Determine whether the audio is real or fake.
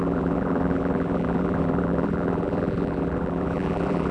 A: fake